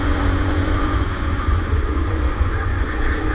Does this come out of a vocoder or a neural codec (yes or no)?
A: yes